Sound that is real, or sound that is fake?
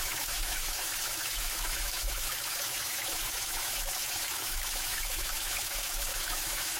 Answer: fake